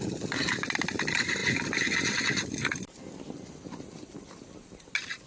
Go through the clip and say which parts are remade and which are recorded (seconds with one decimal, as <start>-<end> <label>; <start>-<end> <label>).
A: 0.0-5.3 recorded